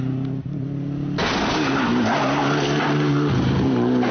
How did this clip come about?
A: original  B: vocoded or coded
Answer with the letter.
A